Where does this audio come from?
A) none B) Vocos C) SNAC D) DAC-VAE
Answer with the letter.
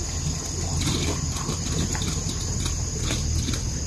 A